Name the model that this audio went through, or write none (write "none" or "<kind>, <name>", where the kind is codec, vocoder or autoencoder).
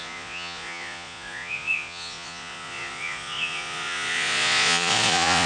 vocoder, Vocos